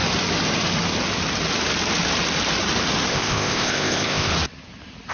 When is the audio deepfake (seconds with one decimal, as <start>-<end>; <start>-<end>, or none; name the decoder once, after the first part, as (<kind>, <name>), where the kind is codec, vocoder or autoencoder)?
3.1-4.3 (codec, ZipCodec)